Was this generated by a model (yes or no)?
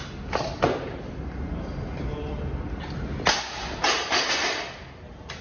no